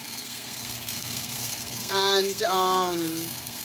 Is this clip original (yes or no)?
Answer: no